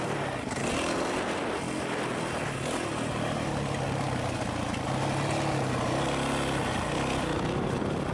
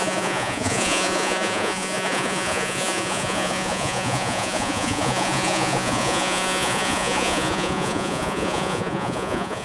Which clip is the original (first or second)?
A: first